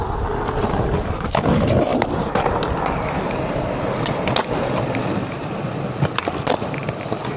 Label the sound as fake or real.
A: real